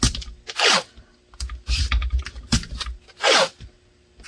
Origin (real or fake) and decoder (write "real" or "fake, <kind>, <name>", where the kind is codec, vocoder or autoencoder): real